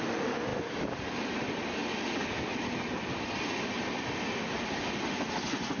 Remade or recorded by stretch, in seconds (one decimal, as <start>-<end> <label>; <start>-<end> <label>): 0.0-5.8 recorded